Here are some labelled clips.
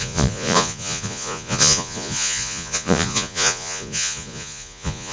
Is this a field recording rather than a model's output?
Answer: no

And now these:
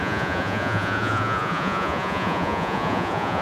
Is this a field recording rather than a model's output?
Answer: no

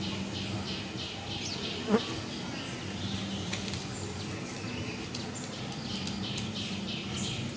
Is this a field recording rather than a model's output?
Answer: yes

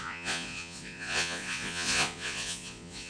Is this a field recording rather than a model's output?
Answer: no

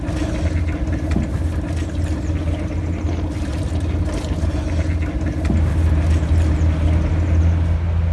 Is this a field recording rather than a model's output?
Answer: yes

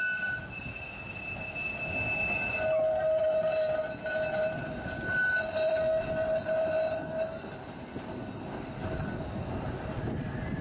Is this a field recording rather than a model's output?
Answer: yes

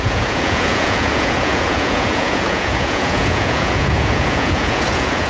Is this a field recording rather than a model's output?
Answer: no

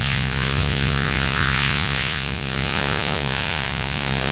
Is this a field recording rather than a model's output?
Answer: no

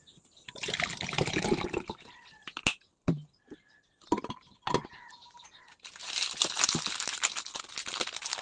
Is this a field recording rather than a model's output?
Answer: yes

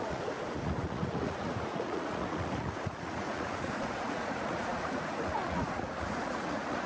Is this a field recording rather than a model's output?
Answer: no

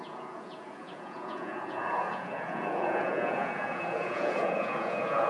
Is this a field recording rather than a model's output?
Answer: no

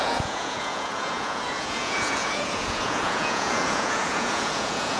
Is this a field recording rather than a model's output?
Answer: no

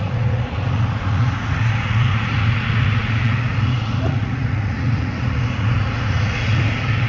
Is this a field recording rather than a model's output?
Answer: no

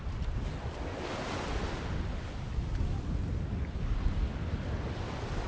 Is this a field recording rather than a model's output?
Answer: yes